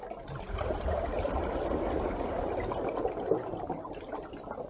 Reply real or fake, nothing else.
real